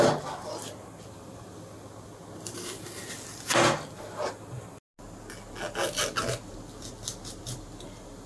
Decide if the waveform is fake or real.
real